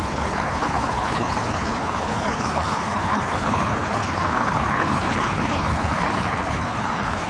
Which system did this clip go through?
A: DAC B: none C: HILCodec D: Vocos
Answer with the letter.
C